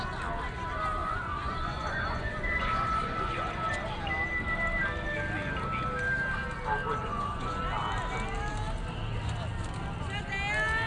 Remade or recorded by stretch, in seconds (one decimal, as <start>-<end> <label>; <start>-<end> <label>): 0.0-1.0 recorded; 1.0-3.5 remade; 3.5-7.0 recorded; 7.0-7.6 remade; 7.6-10.9 recorded